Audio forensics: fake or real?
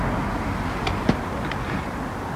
real